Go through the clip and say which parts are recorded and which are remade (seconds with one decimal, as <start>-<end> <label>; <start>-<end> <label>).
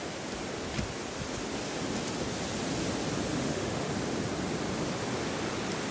0.0-3.3 recorded; 3.3-3.9 remade; 3.9-5.9 recorded